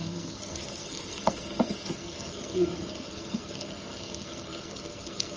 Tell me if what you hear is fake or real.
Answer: fake